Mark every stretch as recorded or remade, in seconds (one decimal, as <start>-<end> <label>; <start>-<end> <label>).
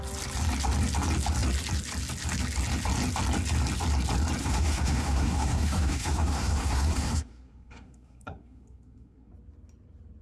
0.0-4.4 recorded; 4.4-9.3 remade; 9.3-10.2 recorded